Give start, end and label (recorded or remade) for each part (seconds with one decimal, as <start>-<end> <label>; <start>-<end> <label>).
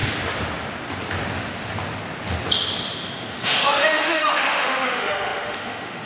0.0-3.3 recorded; 3.3-6.0 remade